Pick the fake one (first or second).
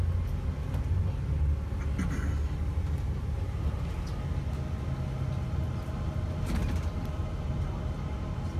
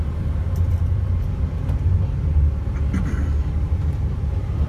second